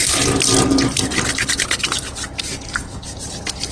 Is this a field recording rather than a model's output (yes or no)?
yes